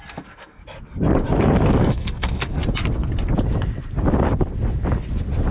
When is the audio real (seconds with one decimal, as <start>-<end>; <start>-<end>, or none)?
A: 0.6-1.8; 2.6-5.5